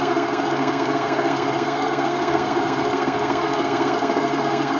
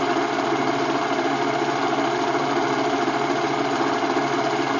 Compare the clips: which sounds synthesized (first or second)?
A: first